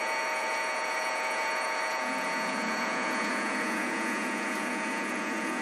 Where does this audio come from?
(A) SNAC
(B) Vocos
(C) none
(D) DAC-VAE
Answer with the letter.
B